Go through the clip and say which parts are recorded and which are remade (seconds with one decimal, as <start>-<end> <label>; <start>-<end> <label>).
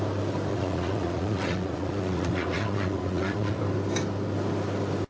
0.0-0.5 recorded; 0.5-3.6 remade; 3.6-5.1 recorded